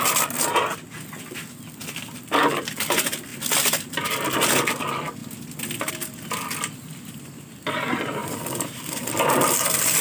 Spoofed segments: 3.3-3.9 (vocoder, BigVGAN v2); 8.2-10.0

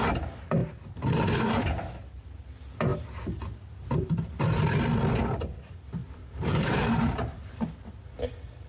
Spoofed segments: 6.0-7.5 (vocoder, BigVGAN v2)